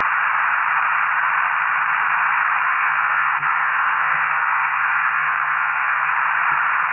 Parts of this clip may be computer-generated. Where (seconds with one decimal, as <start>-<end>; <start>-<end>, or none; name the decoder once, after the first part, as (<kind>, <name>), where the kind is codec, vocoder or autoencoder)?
2.7-6.1 (codec, SNAC)